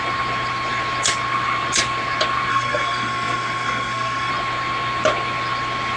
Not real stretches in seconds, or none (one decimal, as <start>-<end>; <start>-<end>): 2.5-4.3